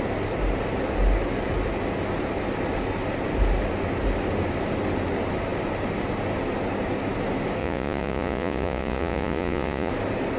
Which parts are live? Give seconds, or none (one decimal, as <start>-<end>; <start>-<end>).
0.0-7.6; 9.9-10.4